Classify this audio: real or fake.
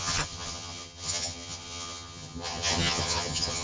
fake